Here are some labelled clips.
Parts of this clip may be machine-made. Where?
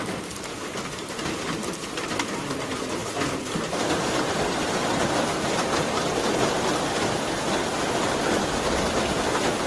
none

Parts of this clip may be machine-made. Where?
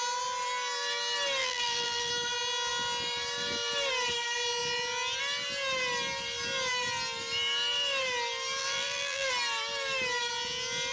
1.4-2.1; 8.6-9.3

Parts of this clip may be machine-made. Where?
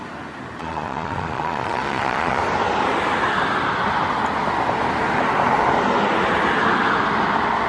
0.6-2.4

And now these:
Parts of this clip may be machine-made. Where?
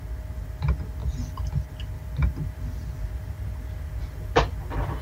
none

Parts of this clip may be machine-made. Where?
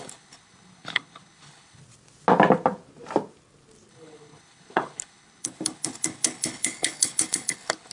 0.0-1.8; 3.9-7.9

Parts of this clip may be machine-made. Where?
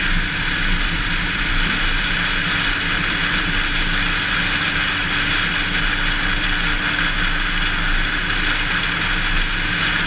none